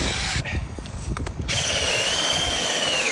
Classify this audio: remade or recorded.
remade